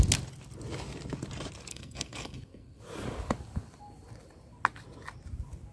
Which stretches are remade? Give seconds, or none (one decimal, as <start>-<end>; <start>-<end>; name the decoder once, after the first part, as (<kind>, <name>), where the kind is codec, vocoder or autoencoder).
1.7-2.8 (codec, SNAC)

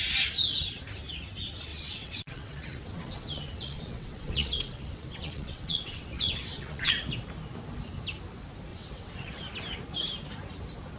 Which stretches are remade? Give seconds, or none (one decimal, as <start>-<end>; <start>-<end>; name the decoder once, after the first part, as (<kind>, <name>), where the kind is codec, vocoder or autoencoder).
1.7-6.9 (vocoder, WaveNeXt); 8.7-9.4

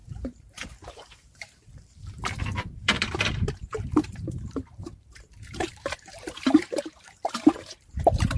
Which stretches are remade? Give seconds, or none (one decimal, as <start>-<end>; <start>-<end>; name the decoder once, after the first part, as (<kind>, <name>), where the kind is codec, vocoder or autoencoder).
0.0-8.4 (vocoder, BigVGAN v2)